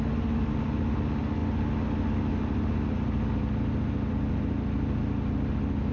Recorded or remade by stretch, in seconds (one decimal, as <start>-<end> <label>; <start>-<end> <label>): 0.0-5.9 recorded